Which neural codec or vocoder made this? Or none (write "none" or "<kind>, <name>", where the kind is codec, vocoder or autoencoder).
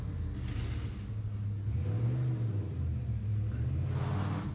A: none